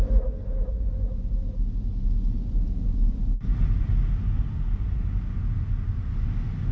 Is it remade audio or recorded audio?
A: recorded